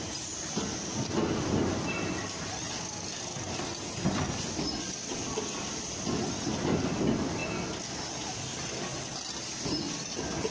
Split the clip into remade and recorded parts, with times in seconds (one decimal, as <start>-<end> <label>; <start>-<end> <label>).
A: 0.0-10.5 recorded